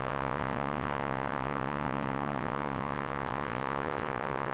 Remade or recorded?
remade